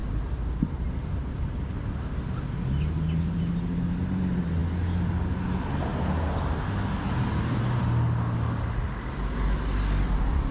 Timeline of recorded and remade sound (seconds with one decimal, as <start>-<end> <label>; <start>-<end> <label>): 0.0-0.9 remade; 0.9-5.9 recorded; 5.9-7.8 remade; 7.8-10.5 recorded